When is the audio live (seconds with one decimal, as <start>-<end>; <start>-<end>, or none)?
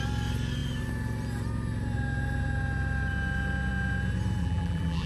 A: 0.0-4.4